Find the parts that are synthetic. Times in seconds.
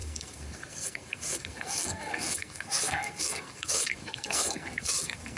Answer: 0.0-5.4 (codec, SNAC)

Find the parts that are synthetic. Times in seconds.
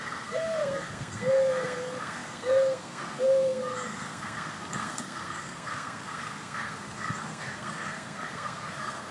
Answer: 0.0-9.1 (codec, SNAC)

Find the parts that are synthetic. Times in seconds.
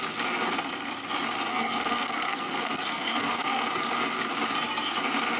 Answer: 1.5-3.6 (codec, SNAC)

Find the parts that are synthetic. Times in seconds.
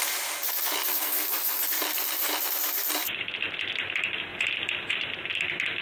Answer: 0.9-1.6 (codec, SNAC)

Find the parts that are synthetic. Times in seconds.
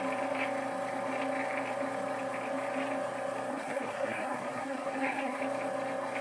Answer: 3.5-5.4 (codec, SNAC)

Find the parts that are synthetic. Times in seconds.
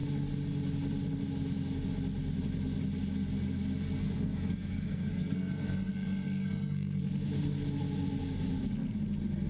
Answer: 4.0-7.0 (codec, SNAC)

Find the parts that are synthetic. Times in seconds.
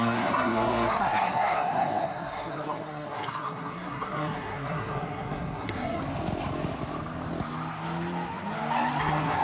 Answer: 0.0-6.0 (codec, SNAC); 9.0-9.4